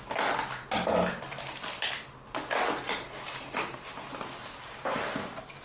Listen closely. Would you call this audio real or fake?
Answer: real